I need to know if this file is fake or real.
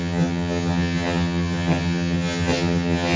fake